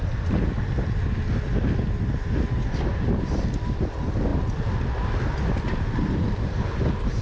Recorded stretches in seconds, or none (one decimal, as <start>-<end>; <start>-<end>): 0.0-7.2